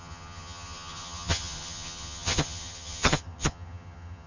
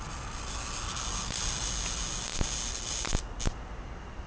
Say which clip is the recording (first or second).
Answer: second